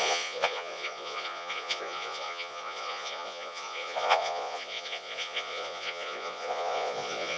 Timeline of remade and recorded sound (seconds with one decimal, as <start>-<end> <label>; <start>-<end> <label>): 0.0-7.4 remade